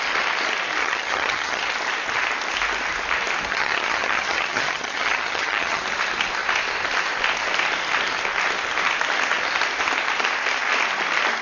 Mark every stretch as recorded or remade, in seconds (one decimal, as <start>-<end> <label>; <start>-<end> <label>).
0.0-0.8 recorded; 0.8-1.7 remade; 1.7-3.5 recorded; 3.5-5.8 remade; 5.8-11.4 recorded